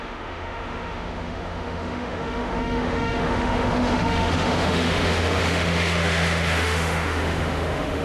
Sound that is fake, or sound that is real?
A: fake